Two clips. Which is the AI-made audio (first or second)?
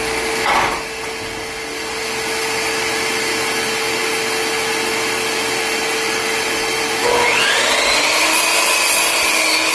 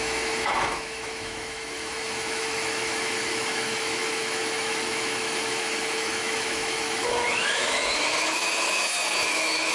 second